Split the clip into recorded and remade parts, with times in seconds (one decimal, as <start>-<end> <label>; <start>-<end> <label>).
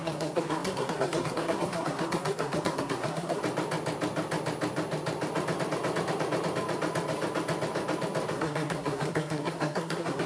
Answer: 0.0-3.4 remade; 3.4-8.3 recorded; 8.3-10.3 remade